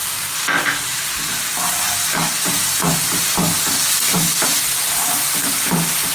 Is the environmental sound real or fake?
real